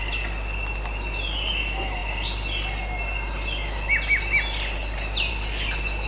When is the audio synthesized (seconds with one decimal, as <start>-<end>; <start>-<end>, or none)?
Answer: none